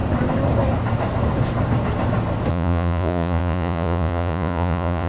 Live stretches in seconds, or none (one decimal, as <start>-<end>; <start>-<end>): 0.0-2.5